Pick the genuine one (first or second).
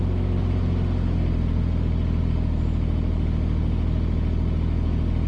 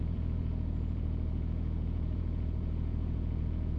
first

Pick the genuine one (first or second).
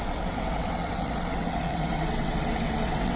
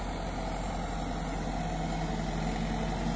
second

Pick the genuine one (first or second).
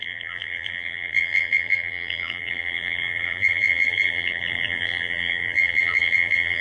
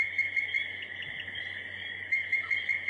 second